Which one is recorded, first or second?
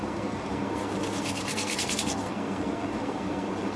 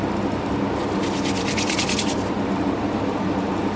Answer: second